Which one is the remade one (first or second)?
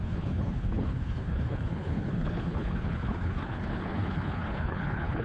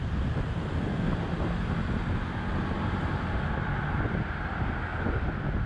first